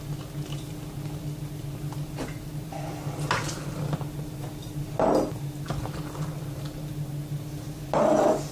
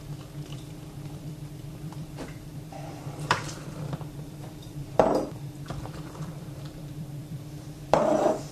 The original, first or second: first